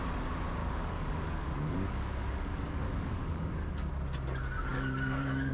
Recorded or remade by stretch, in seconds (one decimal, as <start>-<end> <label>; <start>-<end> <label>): 0.0-0.6 recorded; 0.6-3.9 remade; 3.9-4.7 recorded; 4.7-5.5 remade